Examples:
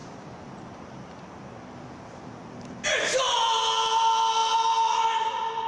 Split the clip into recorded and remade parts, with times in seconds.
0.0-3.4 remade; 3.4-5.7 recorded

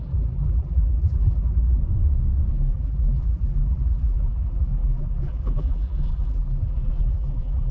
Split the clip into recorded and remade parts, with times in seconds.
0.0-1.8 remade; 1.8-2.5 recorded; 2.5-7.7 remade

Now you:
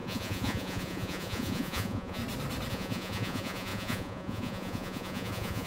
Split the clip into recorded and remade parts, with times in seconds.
0.0-2.2 remade; 2.2-2.7 recorded; 2.7-5.7 remade

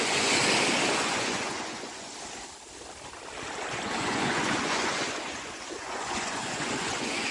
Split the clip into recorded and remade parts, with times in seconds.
0.0-0.4 remade; 0.4-0.9 recorded; 0.9-2.1 remade; 2.1-3.7 recorded; 3.7-7.3 remade